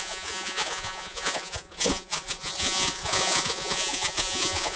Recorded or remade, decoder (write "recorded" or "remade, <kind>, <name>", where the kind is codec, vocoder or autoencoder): remade, vocoder, Vocos